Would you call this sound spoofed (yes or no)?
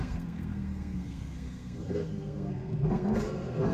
yes